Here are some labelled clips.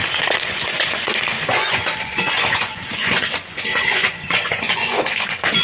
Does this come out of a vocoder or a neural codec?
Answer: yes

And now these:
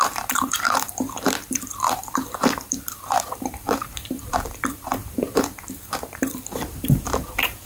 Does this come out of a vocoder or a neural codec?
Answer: yes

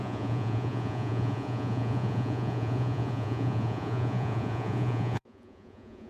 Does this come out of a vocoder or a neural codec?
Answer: yes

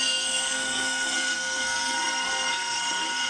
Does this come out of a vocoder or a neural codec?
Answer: yes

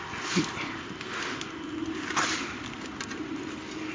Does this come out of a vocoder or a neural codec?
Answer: no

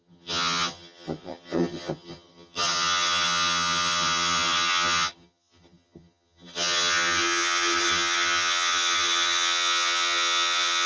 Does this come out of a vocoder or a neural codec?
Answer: yes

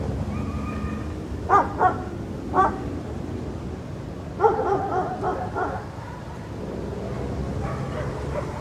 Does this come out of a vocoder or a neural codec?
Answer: no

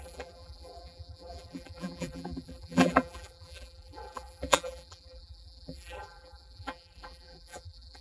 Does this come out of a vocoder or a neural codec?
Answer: yes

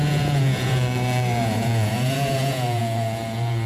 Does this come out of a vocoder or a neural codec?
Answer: yes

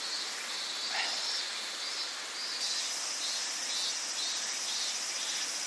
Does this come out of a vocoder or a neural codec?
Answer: no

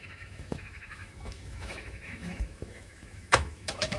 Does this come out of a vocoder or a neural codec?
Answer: yes